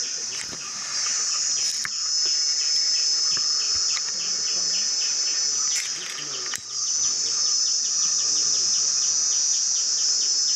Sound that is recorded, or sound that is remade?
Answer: recorded